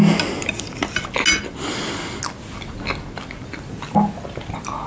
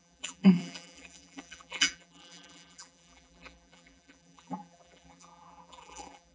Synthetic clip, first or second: second